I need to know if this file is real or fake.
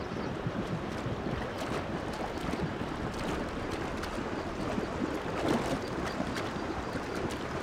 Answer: real